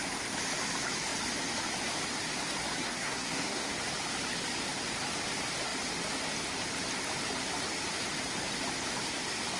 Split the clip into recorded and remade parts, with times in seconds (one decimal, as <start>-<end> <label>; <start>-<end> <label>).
0.0-2.8 recorded; 2.8-3.7 remade; 3.7-9.6 recorded